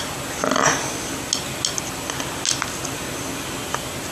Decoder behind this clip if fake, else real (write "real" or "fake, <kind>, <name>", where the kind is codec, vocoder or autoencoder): real